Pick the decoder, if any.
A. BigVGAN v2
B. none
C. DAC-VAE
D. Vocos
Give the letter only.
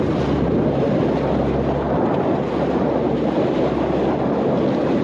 B